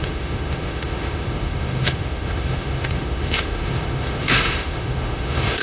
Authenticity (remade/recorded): remade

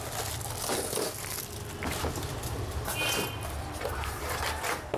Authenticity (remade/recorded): recorded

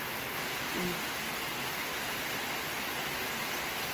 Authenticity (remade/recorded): recorded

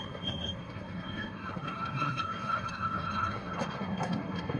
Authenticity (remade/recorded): remade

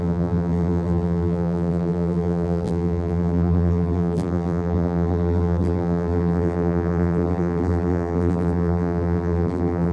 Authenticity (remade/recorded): remade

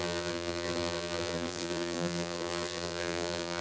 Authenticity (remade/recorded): remade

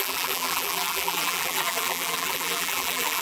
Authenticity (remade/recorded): remade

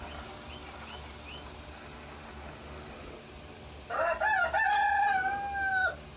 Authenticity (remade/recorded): recorded